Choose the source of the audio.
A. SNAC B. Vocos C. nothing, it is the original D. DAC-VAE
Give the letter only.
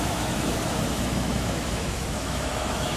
D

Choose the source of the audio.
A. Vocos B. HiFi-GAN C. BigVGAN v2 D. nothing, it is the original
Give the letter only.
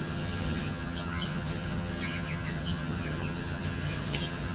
B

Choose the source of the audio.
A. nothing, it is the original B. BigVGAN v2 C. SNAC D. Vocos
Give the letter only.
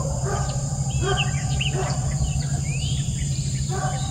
B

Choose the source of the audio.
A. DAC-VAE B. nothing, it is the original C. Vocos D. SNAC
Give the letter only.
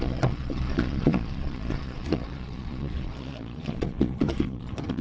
C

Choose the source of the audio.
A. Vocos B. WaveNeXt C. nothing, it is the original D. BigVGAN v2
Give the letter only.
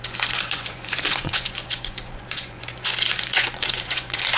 A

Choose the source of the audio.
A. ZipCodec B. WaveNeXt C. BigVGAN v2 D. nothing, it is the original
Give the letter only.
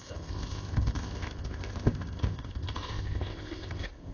A